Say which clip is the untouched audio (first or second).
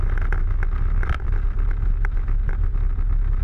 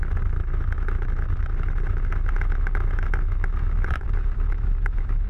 first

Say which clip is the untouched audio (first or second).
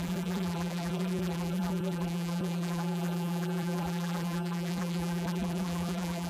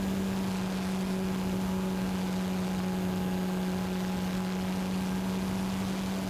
second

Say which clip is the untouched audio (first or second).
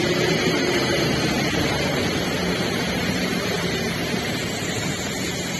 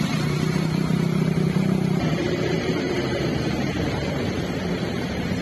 first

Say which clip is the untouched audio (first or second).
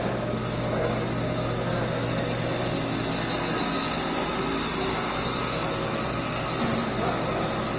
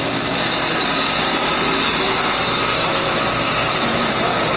first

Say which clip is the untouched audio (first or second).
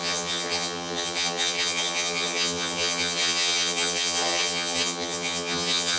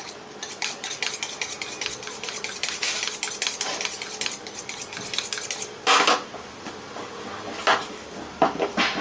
second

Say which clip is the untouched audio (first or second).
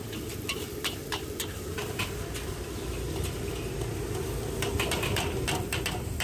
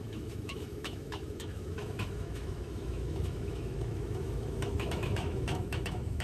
first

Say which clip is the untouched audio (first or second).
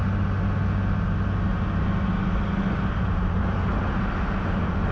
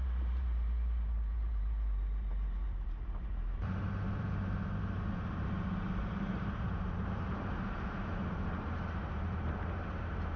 first